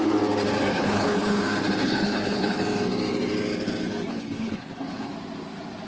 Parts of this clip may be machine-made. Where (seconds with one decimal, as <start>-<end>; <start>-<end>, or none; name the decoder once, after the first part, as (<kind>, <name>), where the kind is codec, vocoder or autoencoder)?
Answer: 0.7-1.4 (codec, HILCodec); 1.8-2.6; 4.1-5.1